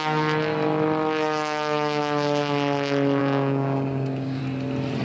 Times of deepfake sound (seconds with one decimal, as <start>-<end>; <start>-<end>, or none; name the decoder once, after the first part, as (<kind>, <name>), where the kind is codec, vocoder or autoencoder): 3.2-4.4 (codec, DAC)